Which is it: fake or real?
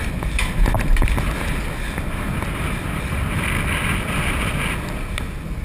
real